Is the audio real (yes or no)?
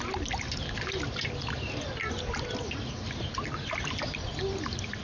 yes